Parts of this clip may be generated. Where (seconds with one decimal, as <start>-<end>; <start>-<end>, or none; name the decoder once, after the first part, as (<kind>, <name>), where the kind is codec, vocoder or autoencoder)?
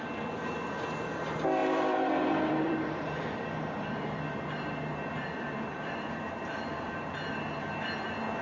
1.6-6.2 (vocoder, BigVGAN v2)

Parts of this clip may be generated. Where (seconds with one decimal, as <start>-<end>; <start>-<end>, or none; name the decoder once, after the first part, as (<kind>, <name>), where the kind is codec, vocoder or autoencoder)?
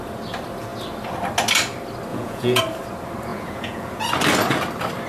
2.1-2.6 (vocoder, Vocos); 3.3-4.0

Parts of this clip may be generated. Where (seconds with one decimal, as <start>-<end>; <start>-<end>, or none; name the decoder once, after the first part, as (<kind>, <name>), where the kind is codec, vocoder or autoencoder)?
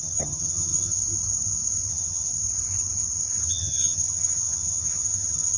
0.0-1.0 (vocoder, HiFi-GAN); 1.9-2.3; 3.4-5.6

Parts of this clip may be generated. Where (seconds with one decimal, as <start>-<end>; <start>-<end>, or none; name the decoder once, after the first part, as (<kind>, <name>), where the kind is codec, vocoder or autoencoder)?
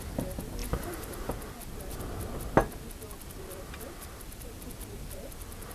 none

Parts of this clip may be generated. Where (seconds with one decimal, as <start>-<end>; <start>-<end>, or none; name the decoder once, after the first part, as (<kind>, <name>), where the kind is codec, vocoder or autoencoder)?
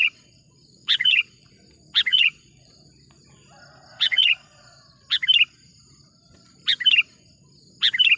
0.0-1.5 (vocoder, Vocos); 2.1-2.7; 3.9-5.0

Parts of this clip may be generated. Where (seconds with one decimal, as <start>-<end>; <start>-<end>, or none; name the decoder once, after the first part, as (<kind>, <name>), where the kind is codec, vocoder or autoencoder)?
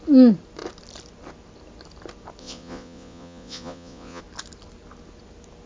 2.4-4.2 (vocoder, Vocos)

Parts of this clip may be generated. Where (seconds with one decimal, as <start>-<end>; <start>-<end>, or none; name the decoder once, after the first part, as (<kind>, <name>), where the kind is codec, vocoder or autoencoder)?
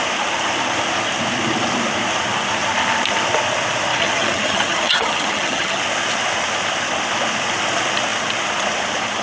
3.9-5.8 (vocoder, HiFi-GAN)